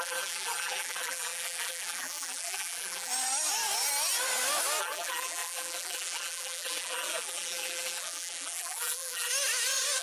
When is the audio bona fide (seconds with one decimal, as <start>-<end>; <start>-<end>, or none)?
3.1-4.8; 9.3-10.0